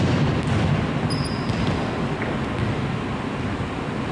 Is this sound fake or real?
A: real